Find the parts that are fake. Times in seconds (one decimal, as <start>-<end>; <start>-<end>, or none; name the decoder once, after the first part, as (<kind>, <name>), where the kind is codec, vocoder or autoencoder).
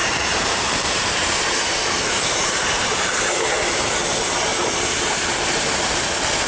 0.0-3.9 (vocoder, BigVGAN v2); 4.5-6.0